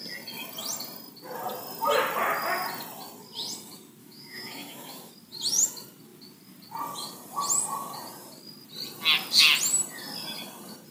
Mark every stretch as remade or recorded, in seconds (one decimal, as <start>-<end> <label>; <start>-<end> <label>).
0.0-4.0 recorded; 4.0-5.1 remade; 5.1-10.9 recorded